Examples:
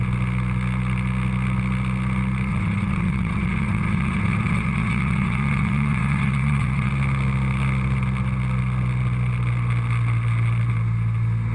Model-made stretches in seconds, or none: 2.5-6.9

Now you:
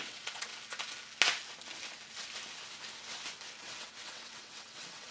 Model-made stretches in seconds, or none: 0.0-0.5; 3.6-5.1

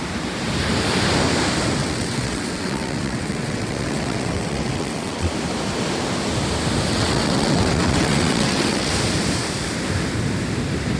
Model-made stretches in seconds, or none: 1.8-5.3; 6.9-8.9

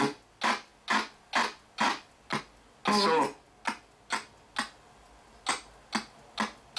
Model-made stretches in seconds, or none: none

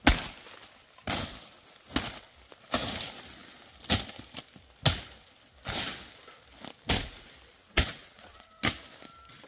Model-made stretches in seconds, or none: 7.6-8.6

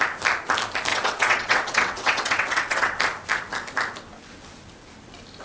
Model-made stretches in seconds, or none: 0.9-3.0

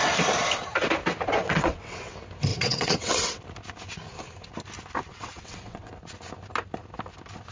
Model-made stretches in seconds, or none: 1.4-2.1; 2.5-3.4; 5.1-5.9